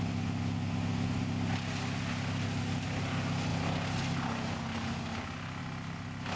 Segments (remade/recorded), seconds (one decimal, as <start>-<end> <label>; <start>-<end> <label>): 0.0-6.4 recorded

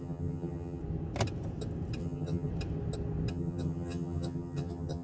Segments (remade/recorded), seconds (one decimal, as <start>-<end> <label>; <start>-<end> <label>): 0.0-0.8 remade; 0.8-2.0 recorded; 2.0-2.5 remade; 2.5-3.3 recorded; 3.3-5.0 remade

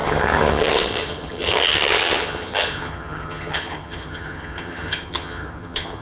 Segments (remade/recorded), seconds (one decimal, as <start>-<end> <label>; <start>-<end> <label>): 0.0-6.0 remade

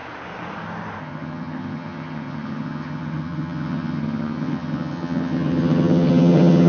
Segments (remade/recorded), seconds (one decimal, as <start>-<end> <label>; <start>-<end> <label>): 0.0-1.0 recorded; 1.0-6.7 remade